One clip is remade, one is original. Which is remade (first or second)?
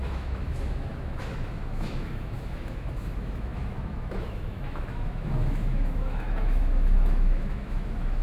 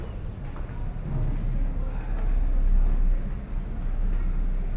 first